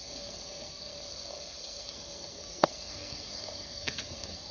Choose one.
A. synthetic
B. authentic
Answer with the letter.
A